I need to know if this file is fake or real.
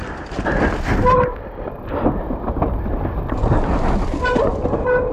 real